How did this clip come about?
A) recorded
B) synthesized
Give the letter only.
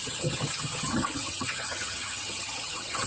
B